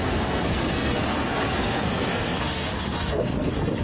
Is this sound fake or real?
fake